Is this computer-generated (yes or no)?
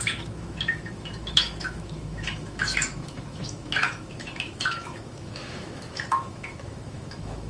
yes